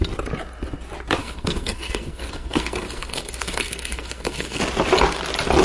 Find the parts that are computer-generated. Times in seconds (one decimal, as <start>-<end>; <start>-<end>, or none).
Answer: 1.2-4.6